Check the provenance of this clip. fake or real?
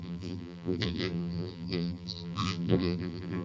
fake